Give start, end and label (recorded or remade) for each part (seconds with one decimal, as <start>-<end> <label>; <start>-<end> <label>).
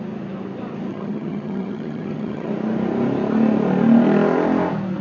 0.0-0.9 recorded; 0.9-2.5 remade; 2.5-5.0 recorded